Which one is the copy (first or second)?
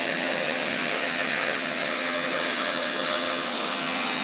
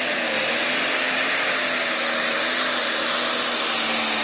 first